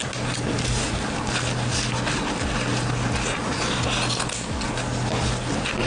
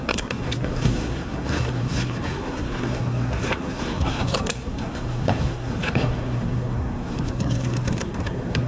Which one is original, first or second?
first